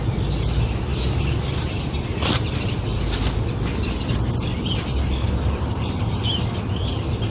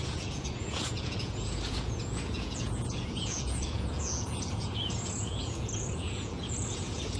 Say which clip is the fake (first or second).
second